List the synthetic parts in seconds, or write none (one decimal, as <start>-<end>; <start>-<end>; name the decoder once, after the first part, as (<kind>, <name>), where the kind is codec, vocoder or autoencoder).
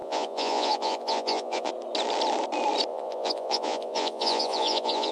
0.0-1.7 (vocoder, Vocos); 2.9-5.1